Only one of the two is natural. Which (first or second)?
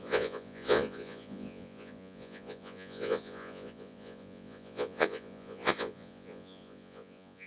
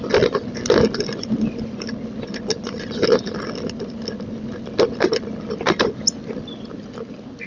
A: second